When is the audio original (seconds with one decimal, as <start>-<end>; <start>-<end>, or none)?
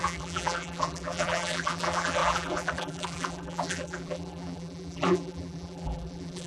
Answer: none